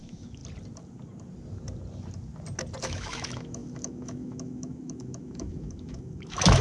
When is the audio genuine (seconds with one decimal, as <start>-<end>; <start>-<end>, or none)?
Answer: 0.4-2.8